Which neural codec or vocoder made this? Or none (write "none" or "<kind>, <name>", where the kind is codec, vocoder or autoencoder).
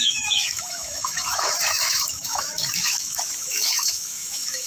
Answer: autoencoder, DAC-VAE